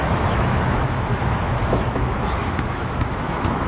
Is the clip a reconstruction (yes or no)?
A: yes